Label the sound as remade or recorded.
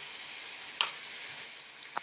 recorded